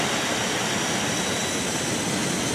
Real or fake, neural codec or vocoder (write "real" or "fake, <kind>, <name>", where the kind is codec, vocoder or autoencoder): real